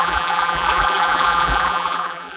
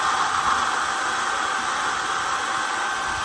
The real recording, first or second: second